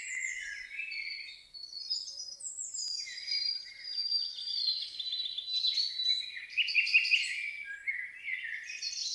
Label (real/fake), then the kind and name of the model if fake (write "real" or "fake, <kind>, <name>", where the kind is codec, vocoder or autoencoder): real